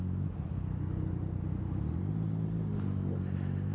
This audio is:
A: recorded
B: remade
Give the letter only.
A